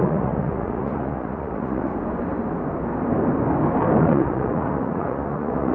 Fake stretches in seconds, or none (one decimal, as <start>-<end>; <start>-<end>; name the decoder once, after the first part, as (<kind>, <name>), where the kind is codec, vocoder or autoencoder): 0.0-1.9 (vocoder, Vocos); 4.0-5.7